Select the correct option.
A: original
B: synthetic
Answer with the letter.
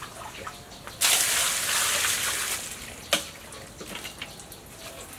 A